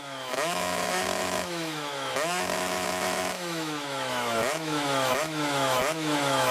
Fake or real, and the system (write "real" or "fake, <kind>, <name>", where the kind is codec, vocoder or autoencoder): fake, autoencoder, DAC-VAE